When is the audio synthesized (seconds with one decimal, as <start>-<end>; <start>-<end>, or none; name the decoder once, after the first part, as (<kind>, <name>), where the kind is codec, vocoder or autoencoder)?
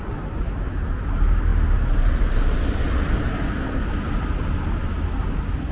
none